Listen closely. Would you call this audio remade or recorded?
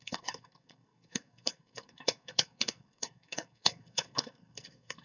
remade